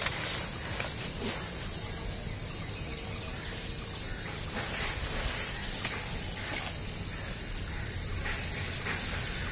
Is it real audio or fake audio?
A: real